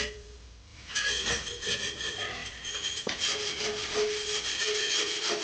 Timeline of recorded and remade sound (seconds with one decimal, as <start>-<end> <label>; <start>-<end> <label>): 0.0-0.7 remade; 0.7-1.3 recorded; 1.3-5.4 remade

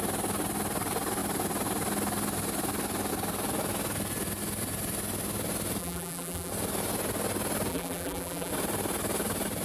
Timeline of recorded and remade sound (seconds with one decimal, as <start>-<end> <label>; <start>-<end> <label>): 0.0-5.8 recorded; 5.8-6.5 remade; 6.5-7.7 recorded; 7.7-8.5 remade; 8.5-9.6 recorded

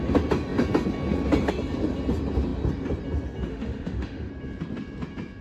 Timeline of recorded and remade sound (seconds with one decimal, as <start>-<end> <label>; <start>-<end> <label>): 0.0-3.5 recorded; 3.5-4.3 remade; 4.3-5.4 recorded

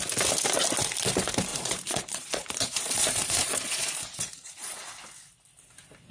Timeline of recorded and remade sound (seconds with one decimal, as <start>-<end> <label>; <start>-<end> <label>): 0.0-1.5 recorded; 1.5-4.9 remade; 4.9-6.1 recorded

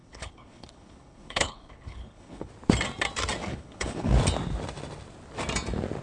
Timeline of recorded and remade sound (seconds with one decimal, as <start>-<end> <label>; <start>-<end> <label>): 0.0-2.5 remade; 2.5-3.5 recorded; 3.5-4.1 remade; 4.1-6.0 recorded